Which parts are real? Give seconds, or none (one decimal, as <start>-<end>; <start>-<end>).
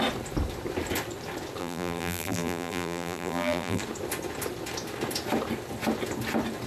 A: 0.0-1.6; 3.8-6.7